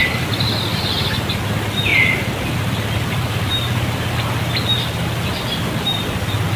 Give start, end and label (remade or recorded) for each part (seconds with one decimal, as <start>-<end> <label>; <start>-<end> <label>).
0.0-1.9 recorded; 1.9-5.9 remade; 5.9-6.6 recorded